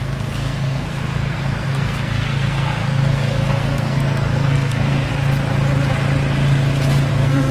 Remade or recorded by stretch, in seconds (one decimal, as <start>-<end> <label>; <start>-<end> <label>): 0.0-5.1 remade; 5.1-7.1 recorded; 7.1-7.5 remade